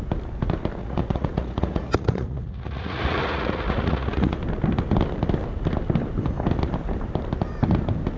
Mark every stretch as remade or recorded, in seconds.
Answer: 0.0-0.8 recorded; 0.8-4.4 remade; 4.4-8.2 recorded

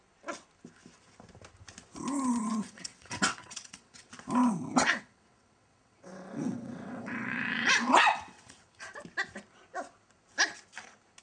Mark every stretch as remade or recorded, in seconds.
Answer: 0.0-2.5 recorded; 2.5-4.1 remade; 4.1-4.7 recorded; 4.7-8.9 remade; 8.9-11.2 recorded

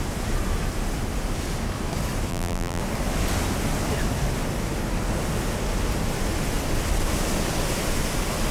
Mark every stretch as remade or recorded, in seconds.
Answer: 0.0-2.3 recorded; 2.3-2.8 remade; 2.8-8.5 recorded